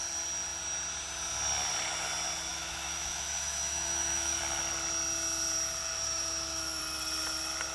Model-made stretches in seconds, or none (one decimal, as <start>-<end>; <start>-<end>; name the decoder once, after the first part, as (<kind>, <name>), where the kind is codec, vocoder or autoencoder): 2.5-4.4 (autoencoder, DAC-VAE); 5.8-6.8